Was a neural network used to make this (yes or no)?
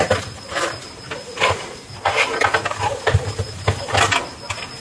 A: no